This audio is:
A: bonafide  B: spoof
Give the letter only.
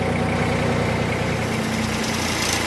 A